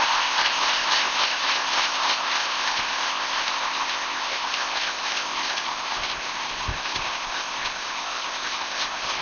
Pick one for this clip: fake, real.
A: fake